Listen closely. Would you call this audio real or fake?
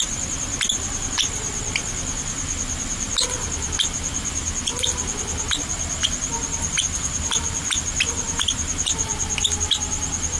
real